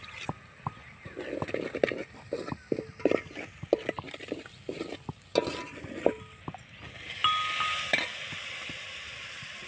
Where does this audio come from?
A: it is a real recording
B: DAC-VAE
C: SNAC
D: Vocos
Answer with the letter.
A